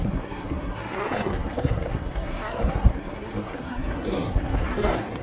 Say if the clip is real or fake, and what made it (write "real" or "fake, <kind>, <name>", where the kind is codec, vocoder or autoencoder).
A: fake, codec, SNAC